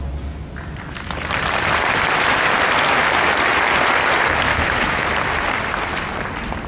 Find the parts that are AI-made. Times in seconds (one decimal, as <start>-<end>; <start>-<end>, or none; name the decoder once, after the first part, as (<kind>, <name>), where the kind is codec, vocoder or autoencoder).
4.5-5.0 (autoencoder, DAC-VAE)

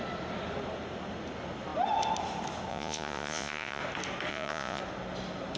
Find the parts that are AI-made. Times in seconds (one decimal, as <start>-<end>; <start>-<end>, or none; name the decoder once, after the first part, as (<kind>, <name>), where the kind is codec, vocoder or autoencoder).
2.7-3.8 (vocoder, Vocos); 4.3-4.8

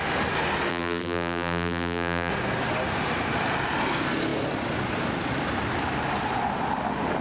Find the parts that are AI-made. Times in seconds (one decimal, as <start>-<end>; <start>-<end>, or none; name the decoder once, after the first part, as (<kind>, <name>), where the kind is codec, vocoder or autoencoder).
0.7-2.3 (vocoder, BigVGAN v2)

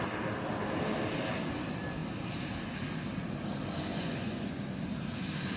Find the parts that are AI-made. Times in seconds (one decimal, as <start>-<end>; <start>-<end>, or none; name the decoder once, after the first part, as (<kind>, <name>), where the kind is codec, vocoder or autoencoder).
3.9-4.6 (vocoder, Vocos)

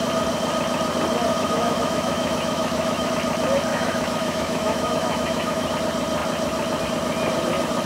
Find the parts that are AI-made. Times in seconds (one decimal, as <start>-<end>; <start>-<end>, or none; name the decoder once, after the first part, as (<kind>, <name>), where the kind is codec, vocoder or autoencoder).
1.3-3.1 (autoencoder, DAC-VAE); 3.7-5.7